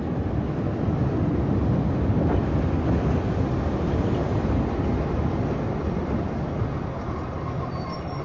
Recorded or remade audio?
recorded